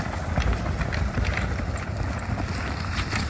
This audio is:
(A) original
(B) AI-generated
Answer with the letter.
A